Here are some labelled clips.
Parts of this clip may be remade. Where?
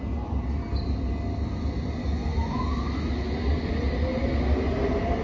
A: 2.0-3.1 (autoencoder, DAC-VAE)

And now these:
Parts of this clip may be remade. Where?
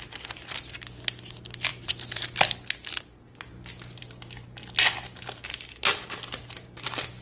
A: 1.7-3.0 (vocoder, BigVGAN v2)